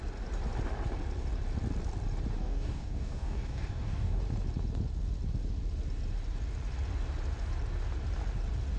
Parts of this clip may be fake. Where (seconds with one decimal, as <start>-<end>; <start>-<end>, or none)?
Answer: 2.4-4.2